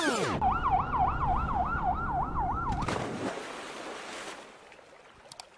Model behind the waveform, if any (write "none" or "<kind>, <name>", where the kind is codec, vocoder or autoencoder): none